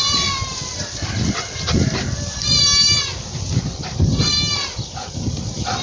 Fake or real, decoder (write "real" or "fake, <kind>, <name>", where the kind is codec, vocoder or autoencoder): real